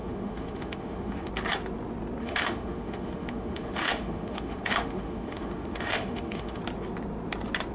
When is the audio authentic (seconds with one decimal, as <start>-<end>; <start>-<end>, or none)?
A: 1.3-2.2; 6.6-7.7

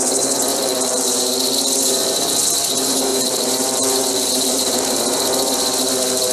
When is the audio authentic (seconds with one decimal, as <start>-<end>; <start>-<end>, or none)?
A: 0.0-0.5; 1.2-3.1; 5.0-6.3

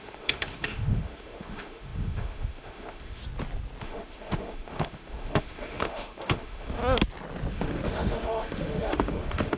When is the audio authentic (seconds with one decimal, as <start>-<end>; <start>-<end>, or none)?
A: 3.2-3.8; 6.8-7.5

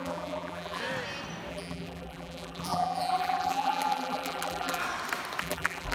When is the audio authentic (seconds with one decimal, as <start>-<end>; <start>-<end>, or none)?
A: 0.8-1.5; 4.8-5.4

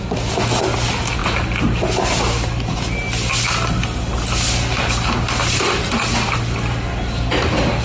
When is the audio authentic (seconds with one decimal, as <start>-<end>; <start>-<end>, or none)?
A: 0.0-7.8

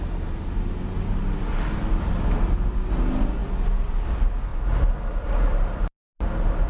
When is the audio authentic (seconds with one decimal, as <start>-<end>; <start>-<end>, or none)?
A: 0.0-4.5; 6.1-6.7